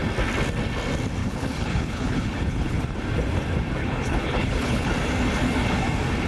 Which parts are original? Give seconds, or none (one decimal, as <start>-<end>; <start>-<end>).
0.0-1.2; 2.8-3.8; 4.9-6.3